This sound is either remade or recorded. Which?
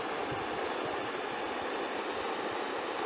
recorded